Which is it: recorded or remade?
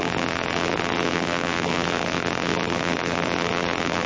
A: remade